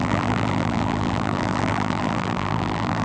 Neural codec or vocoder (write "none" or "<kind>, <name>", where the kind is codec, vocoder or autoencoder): vocoder, BigVGAN v2